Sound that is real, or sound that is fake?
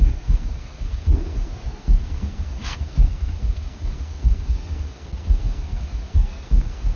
fake